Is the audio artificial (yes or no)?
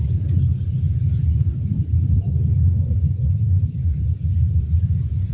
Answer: yes